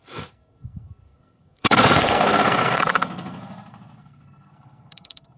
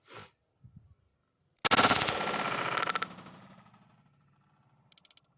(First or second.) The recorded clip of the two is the second